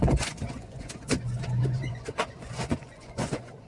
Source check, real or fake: fake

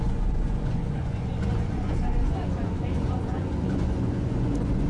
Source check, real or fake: fake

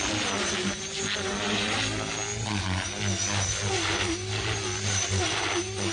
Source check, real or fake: real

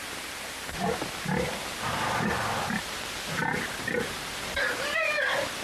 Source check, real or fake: real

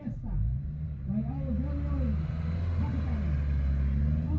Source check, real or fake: real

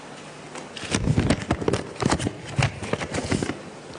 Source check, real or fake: real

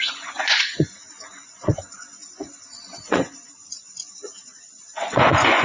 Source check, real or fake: fake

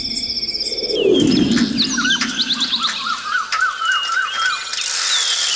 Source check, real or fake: real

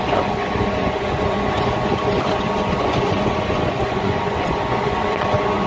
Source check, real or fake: fake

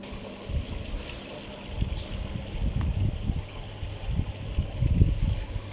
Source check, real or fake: real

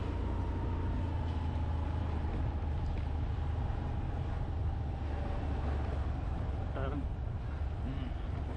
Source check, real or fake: real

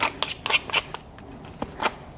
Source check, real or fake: real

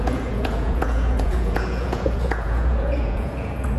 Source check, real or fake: fake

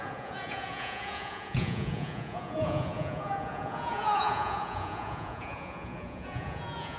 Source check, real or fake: fake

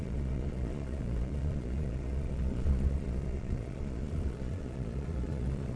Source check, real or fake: fake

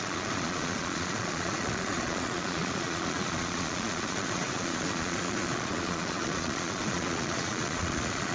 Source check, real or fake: fake